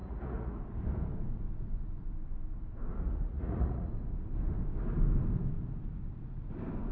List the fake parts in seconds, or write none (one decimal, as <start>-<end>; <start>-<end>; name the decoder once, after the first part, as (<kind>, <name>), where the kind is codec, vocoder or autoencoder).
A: 0.0-0.6 (vocoder, Vocos); 2.9-3.9